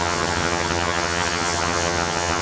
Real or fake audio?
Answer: fake